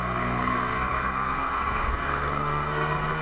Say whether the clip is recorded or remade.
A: remade